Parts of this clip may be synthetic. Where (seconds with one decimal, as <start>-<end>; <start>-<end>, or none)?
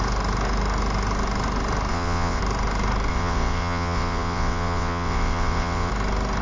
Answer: 1.9-2.4; 3.1-5.9